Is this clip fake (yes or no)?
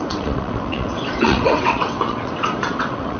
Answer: yes